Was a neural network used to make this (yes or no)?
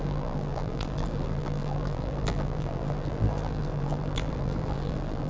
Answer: yes